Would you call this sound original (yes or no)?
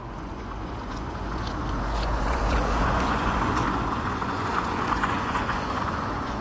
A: no